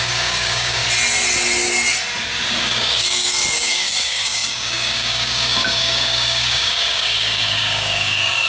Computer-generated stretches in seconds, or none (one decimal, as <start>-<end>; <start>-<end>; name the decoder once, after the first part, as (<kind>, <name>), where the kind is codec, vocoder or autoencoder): 0.0-0.8 (codec, DAC); 2.6-8.5